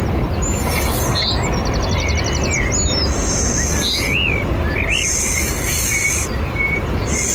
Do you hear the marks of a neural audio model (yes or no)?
no